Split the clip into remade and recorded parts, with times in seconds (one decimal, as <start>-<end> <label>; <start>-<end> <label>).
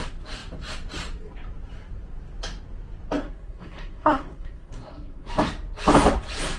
0.0-3.2 recorded; 3.2-5.3 remade; 5.3-6.6 recorded